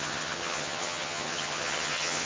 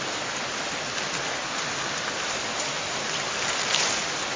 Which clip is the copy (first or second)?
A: first